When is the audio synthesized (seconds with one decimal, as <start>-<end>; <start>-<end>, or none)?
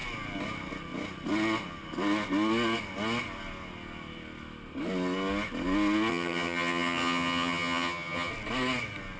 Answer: 6.1-8.3